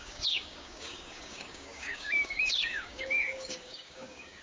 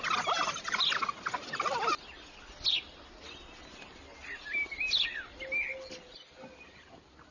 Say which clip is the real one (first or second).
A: second